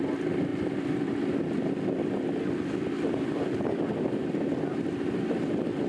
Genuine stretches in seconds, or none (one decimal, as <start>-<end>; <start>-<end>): 0.0-5.9